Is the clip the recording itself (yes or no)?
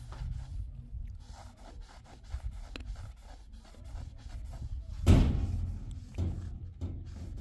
yes